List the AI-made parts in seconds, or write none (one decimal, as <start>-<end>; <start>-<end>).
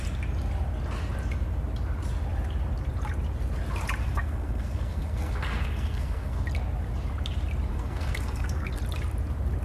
4.0-6.4; 7.7-8.8